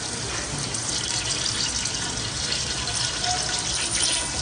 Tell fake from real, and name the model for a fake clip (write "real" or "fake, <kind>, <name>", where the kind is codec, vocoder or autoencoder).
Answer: real